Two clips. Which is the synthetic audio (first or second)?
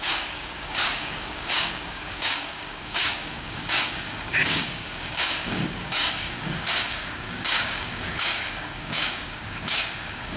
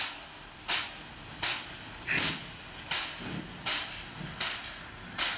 first